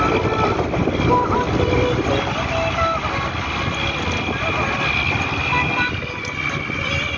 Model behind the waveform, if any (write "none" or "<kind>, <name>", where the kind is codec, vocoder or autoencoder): none